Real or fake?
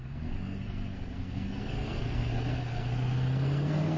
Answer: fake